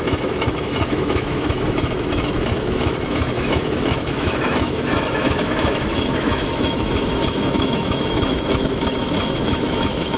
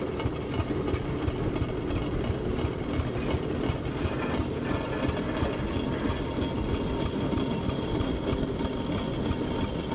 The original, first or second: second